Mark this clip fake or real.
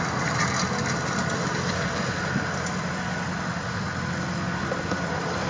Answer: real